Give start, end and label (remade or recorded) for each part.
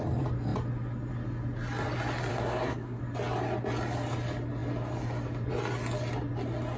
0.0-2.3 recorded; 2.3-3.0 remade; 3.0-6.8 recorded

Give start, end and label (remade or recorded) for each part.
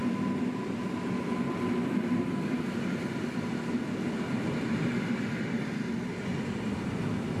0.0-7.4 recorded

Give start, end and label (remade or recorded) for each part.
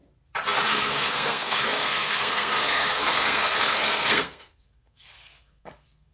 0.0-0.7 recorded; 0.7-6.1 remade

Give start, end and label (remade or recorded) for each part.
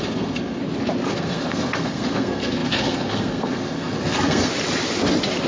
0.0-0.6 remade; 0.6-1.1 recorded; 1.1-4.5 remade; 4.5-5.5 recorded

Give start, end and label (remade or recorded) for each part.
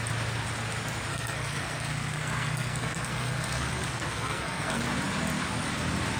0.0-1.1 recorded; 1.1-4.8 remade; 4.8-6.2 recorded